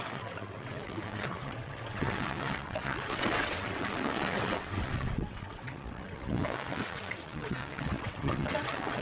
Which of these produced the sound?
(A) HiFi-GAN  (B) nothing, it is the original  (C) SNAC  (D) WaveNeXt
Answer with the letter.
D